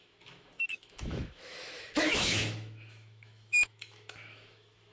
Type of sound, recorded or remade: remade